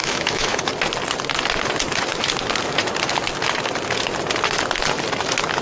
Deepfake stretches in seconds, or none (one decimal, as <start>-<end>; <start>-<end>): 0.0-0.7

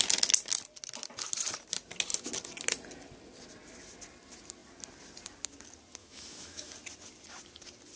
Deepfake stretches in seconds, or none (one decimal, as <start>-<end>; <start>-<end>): 6.0-6.7

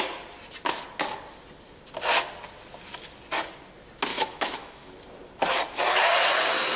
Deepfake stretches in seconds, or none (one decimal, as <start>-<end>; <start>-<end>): 4.1-4.9